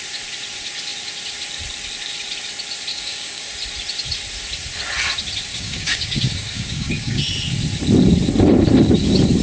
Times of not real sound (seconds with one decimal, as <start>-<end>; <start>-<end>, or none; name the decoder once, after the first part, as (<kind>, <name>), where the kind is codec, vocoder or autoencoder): 2.9-3.5 (codec, DAC); 5.5-7.2